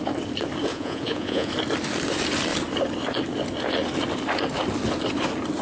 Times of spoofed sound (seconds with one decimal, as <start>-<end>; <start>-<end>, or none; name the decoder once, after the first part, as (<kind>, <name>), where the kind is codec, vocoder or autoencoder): 0.7-1.5 (vocoder, Vocos)